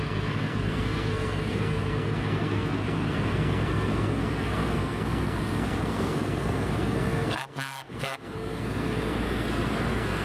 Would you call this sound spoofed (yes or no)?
yes